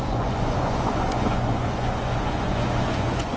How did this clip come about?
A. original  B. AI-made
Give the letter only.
B